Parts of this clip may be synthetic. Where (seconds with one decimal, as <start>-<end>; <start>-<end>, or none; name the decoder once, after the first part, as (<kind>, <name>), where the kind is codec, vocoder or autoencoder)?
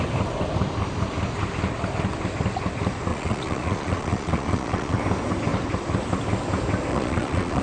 3.1-5.0 (vocoder, Vocos); 6.9-7.6